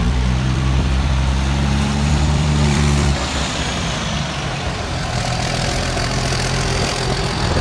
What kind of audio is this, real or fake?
fake